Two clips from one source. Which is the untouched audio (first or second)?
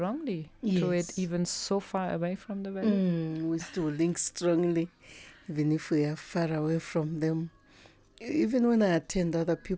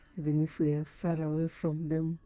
first